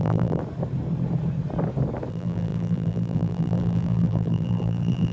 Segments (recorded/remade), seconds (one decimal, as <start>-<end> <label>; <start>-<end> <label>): 0.0-0.4 remade; 0.4-2.1 recorded; 2.1-5.1 remade